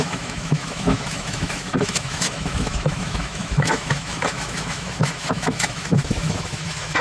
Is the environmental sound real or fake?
fake